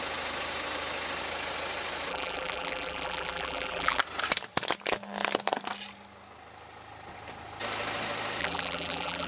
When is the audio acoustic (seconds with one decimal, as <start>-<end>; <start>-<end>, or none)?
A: 0.0-2.1; 4.0-8.4

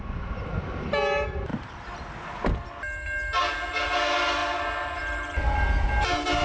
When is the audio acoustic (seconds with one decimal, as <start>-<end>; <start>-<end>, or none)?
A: 0.0-6.4

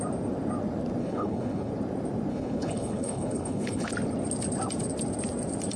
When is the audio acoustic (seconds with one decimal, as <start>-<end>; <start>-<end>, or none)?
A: 0.0-1.0; 1.7-2.3; 3.9-5.8

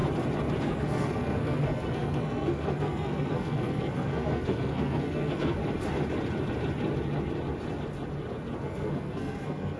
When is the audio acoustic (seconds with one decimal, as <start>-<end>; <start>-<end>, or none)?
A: 0.0-0.6; 5.6-8.6

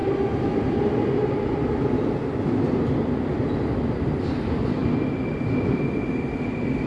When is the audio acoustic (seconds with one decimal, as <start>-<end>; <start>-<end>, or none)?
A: 0.0-6.9

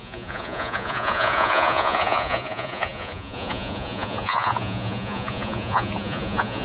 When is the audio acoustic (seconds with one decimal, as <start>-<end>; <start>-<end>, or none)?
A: none

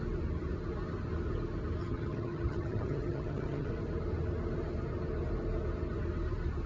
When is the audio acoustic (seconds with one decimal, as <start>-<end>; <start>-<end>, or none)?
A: 0.0-1.8; 3.7-6.7